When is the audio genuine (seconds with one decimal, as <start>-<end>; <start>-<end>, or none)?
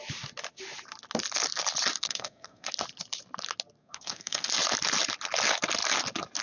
0.0-2.0; 2.7-3.8; 4.5-6.4